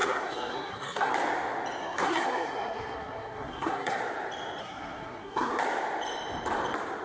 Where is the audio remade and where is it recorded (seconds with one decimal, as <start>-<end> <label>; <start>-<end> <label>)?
0.0-1.1 remade; 1.1-1.8 recorded; 1.8-4.0 remade; 4.0-4.6 recorded; 4.6-5.5 remade; 5.5-7.0 recorded